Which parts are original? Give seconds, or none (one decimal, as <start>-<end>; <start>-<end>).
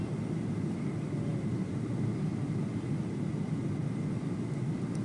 0.0-5.0